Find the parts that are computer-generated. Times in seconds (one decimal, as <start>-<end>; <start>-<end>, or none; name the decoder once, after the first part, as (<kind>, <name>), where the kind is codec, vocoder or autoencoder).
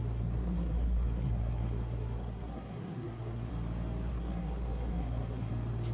0.0-3.5 (codec, SNAC); 4.1-5.5